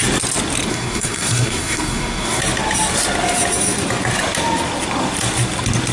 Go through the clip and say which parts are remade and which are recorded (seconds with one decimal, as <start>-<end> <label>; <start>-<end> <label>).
0.0-0.7 recorded; 0.7-2.4 remade; 2.4-5.9 recorded